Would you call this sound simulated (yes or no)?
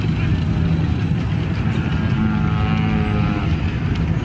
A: no